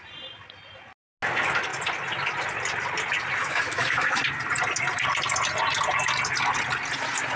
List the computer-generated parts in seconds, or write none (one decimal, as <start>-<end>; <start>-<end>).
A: 3.4-4.2